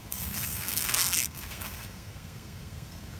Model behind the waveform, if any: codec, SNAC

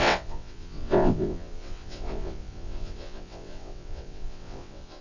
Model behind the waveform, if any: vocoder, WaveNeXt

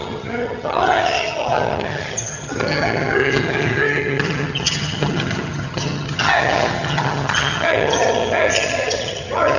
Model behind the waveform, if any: vocoder, HiFi-GAN